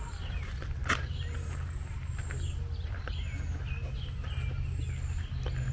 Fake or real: real